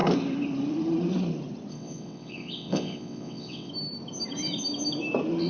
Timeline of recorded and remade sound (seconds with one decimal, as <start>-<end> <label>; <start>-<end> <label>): 0.0-1.7 recorded; 1.7-3.7 remade; 3.7-5.5 recorded

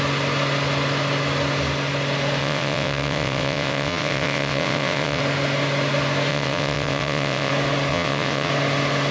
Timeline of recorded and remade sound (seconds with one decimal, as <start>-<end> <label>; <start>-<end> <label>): 0.0-2.4 recorded; 2.4-5.2 remade; 5.2-6.3 recorded; 6.3-7.5 remade; 7.5-7.9 recorded; 7.9-8.5 remade; 8.5-9.1 recorded

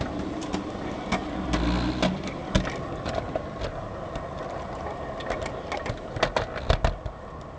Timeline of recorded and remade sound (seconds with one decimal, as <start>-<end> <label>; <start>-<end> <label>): 0.0-7.6 recorded

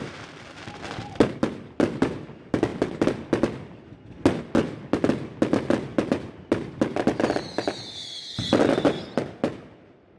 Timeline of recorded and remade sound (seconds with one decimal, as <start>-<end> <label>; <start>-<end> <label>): 0.0-10.2 recorded